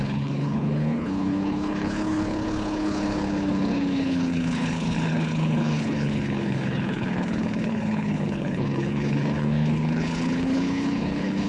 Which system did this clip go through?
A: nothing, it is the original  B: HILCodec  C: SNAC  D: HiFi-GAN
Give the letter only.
B